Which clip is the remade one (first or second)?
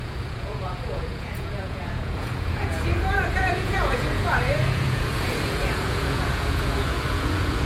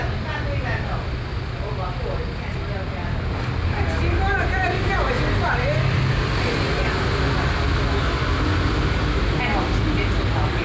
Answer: first